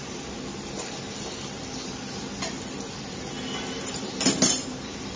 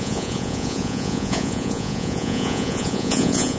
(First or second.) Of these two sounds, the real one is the first